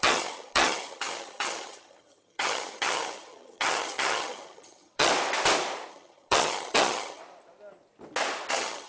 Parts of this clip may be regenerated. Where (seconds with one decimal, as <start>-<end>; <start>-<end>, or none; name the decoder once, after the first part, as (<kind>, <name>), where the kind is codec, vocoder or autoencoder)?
0.0-5.1 (vocoder, HiFi-GAN); 5.9-7.2; 8.5-8.9